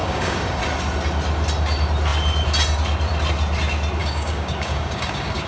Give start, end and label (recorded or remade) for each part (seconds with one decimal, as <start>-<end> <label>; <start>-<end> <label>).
0.0-0.6 remade; 0.6-4.0 recorded; 4.0-5.5 remade